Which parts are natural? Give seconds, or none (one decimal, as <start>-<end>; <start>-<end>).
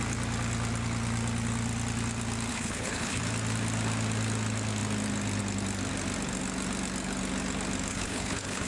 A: 0.0-2.5; 3.2-7.9